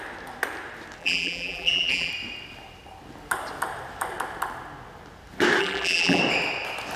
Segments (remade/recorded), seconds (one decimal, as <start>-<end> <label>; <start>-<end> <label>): 0.0-1.0 recorded; 1.0-2.1 remade; 2.1-5.6 recorded; 5.6-6.2 remade; 6.2-7.0 recorded

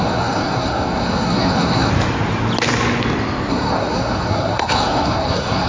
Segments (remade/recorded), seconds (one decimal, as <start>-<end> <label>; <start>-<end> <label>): 0.0-1.9 remade; 1.9-3.5 recorded; 3.5-5.7 remade

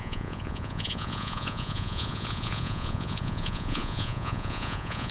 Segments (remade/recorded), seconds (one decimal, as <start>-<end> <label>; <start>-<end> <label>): 0.0-5.1 remade

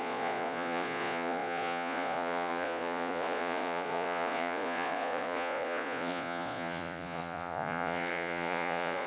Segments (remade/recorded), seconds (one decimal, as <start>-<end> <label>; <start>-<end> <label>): 0.0-9.1 remade

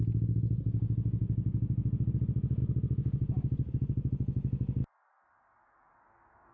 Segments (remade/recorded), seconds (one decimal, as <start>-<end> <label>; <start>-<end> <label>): 0.0-6.5 recorded

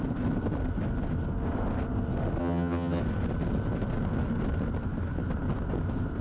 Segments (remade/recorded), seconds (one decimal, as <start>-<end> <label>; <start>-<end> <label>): 0.0-2.4 recorded; 2.4-3.0 remade; 3.0-6.2 recorded